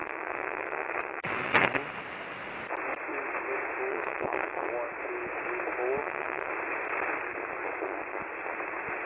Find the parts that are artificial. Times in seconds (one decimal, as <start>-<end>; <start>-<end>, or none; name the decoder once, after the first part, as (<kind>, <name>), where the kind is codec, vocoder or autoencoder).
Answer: 0.0-1.9 (vocoder, WaveNeXt); 3.9-4.7; 6.0-6.5